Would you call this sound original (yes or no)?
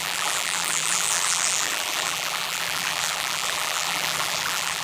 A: no